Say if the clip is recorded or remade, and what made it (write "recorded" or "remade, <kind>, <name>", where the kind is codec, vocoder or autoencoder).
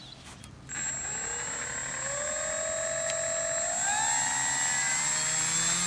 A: recorded